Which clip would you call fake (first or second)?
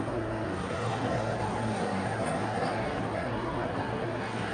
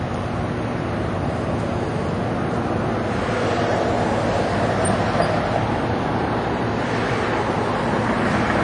first